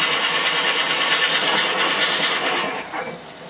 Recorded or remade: recorded